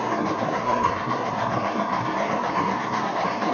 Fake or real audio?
fake